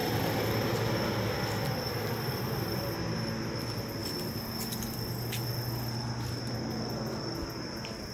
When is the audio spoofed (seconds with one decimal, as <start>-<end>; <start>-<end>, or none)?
none